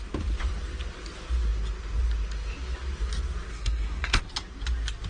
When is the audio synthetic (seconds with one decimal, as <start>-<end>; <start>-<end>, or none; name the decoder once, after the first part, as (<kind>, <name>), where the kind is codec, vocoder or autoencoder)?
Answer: 3.5-4.2 (codec, SNAC)